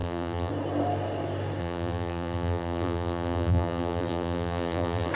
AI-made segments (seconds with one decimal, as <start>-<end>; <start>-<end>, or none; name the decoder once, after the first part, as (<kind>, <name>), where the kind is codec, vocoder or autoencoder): 0.0-0.5 (vocoder, BigVGAN v2); 1.6-5.1